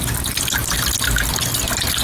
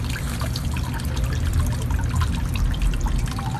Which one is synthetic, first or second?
second